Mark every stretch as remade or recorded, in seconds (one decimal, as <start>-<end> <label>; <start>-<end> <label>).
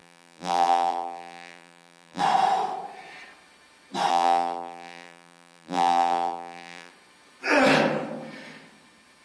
0.0-2.2 remade; 2.2-4.1 recorded; 4.1-6.9 remade; 6.9-9.2 recorded